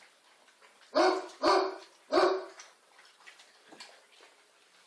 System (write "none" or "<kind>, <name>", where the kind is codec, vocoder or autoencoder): none